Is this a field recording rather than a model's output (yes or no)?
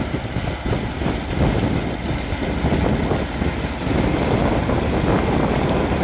yes